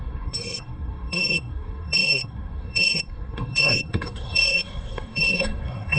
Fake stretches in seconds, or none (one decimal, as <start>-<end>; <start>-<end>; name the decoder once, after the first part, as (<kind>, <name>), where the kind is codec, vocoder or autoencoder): 0.0-6.0 (codec, SNAC)